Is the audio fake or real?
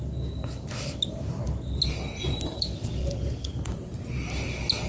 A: real